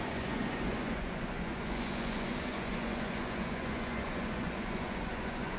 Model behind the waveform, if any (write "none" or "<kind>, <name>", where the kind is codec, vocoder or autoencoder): vocoder, Vocos